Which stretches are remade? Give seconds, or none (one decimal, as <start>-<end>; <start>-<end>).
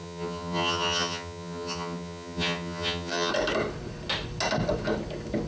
0.0-3.3